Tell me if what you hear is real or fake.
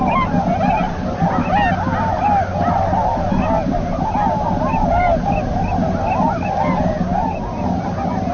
real